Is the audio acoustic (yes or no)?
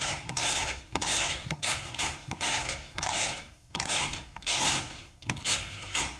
no